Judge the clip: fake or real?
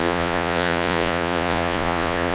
fake